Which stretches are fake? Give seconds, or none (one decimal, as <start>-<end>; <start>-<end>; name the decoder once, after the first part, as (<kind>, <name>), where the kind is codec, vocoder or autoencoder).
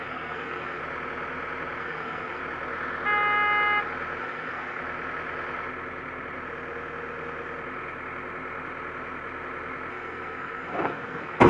0.0-0.8 (codec, SNAC); 1.8-2.4; 4.2-4.8; 9.9-11.5